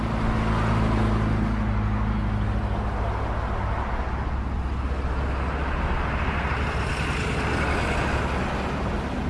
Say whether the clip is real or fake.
real